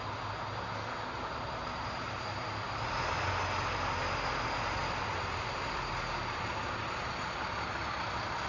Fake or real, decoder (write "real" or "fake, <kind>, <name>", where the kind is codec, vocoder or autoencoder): real